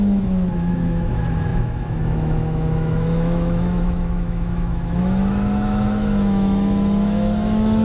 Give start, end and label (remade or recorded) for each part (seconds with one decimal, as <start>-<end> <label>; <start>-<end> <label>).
0.0-7.8 remade